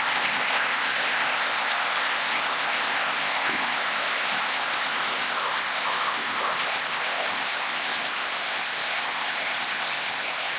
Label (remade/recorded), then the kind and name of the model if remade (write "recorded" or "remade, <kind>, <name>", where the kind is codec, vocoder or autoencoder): remade, codec, ZipCodec